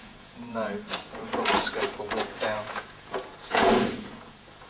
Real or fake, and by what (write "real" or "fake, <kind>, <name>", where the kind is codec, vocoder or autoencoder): fake, vocoder, Vocos